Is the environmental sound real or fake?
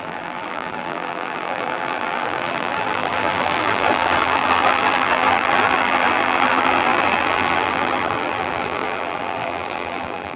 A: fake